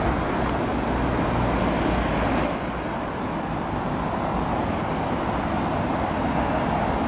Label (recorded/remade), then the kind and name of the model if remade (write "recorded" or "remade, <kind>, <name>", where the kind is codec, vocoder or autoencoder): recorded